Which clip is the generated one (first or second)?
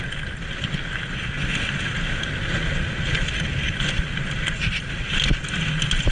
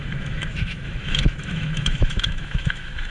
second